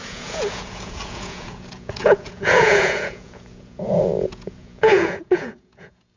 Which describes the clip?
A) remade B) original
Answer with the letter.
A